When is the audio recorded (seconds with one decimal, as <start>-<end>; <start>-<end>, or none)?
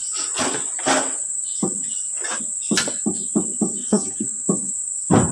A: 0.0-3.8; 4.7-5.3